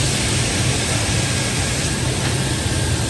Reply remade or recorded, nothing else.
recorded